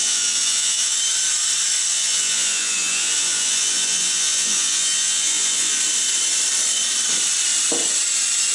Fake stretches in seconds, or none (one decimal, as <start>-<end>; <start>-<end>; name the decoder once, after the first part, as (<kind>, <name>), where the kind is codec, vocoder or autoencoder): 0.0-1.0 (vocoder, Vocos); 1.9-5.8